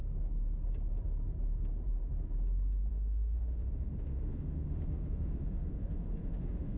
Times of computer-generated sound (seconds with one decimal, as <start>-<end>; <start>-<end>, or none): 2.9-6.8